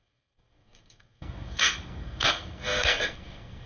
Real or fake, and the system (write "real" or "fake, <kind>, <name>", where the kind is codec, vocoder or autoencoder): fake, codec, SNAC